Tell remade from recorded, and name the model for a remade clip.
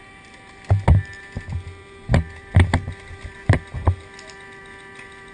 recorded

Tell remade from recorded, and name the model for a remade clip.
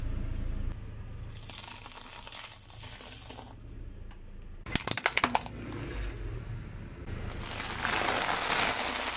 recorded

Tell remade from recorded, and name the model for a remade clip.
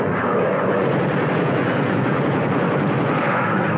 remade, vocoder, Vocos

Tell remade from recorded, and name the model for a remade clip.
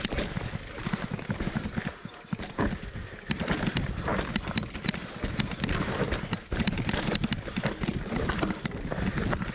recorded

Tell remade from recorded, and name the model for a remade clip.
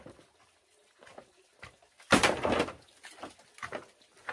recorded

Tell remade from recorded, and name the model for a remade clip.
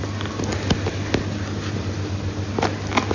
recorded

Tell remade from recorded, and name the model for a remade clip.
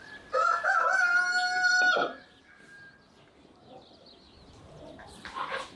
recorded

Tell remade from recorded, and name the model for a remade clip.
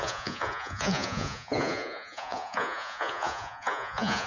remade, vocoder, Vocos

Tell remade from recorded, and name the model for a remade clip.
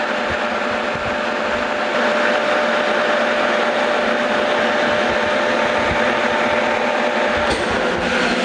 recorded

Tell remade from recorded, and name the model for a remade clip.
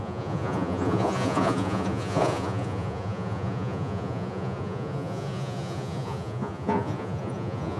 remade, vocoder, Vocos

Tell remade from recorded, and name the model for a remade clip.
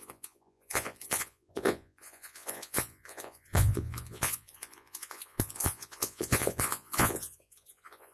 remade, vocoder, Vocos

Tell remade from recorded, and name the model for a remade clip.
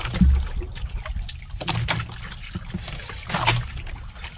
recorded